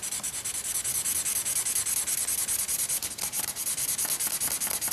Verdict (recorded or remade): recorded